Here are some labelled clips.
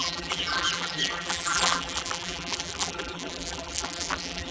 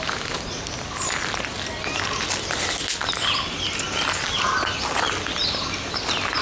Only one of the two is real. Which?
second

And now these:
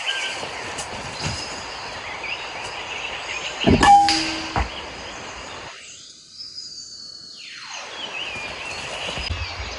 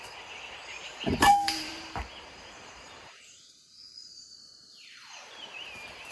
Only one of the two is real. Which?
first